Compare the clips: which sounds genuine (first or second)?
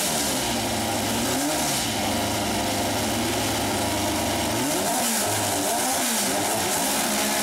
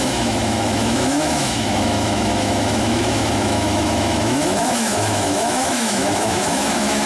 first